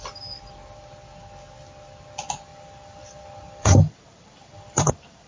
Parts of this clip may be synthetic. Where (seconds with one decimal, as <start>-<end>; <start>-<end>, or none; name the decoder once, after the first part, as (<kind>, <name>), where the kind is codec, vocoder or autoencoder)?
2.5-5.3 (vocoder, BigVGAN v2)

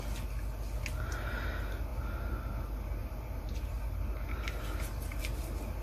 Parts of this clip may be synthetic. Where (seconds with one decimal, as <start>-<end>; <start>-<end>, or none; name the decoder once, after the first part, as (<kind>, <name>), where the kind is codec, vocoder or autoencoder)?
3.0-5.2 (vocoder, BigVGAN v2)

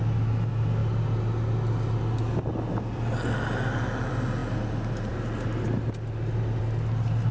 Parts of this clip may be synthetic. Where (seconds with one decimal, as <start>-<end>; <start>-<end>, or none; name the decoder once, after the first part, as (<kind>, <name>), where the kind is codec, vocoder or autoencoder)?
none

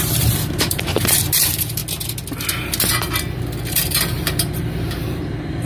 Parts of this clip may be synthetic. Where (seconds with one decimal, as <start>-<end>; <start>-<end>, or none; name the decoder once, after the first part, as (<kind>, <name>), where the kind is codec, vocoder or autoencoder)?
0.0-1.8 (vocoder, BigVGAN v2); 3.7-5.6

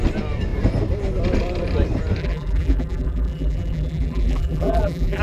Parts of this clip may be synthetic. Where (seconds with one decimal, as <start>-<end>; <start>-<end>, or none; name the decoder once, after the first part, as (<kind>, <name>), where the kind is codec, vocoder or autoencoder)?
2.2-5.2 (vocoder, BigVGAN v2)

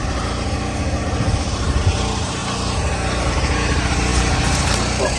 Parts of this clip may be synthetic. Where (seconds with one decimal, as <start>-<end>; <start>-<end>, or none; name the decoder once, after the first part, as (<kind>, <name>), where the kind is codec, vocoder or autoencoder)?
0.0-2.4 (vocoder, BigVGAN v2); 3.3-5.2